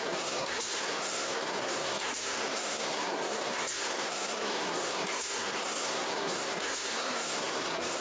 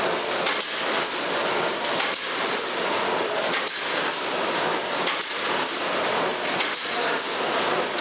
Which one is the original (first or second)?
second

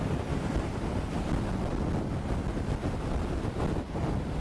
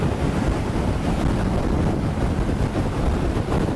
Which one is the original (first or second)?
first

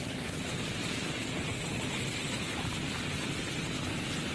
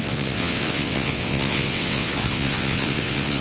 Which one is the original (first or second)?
first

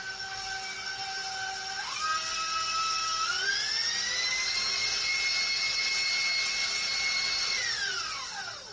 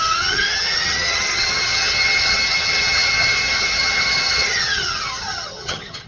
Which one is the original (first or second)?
first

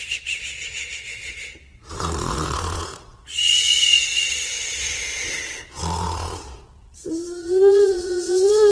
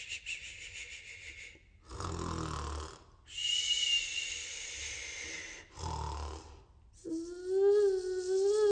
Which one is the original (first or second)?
second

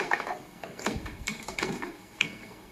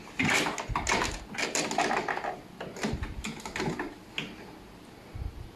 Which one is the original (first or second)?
second